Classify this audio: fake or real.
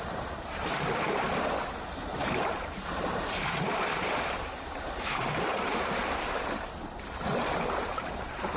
fake